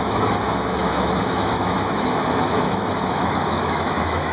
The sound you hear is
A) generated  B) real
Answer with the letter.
A